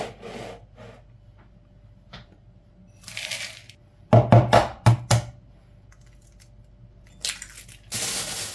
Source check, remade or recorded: recorded